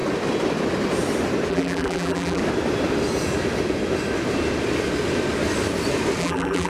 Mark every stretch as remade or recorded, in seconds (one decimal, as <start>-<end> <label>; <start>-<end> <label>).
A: 0.0-1.5 recorded; 1.5-2.4 remade; 2.4-6.2 recorded; 6.2-6.7 remade